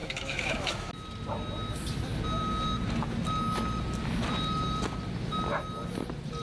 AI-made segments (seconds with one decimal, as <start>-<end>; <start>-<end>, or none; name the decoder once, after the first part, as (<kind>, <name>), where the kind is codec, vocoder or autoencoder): 0.0-0.9 (autoencoder, DAC-VAE)